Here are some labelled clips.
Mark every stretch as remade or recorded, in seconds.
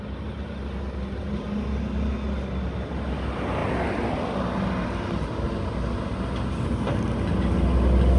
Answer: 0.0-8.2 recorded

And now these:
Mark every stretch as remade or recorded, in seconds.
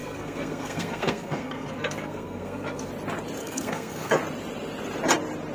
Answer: 0.0-2.9 remade; 2.9-3.4 recorded; 3.4-4.2 remade; 4.2-5.5 recorded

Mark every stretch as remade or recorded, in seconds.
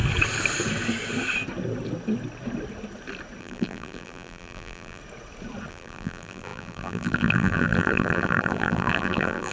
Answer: 0.0-3.4 recorded; 3.4-5.0 remade; 5.0-5.7 recorded; 5.7-9.5 remade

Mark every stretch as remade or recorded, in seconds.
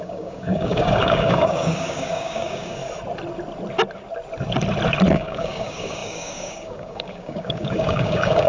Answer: 0.0-2.8 remade; 2.8-5.1 recorded; 5.1-8.5 remade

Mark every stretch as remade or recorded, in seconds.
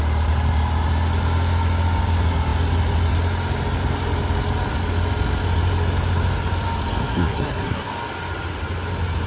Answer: 0.0-7.1 recorded; 7.1-7.9 remade; 7.9-9.3 recorded